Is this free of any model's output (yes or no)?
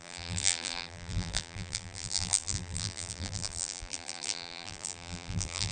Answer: no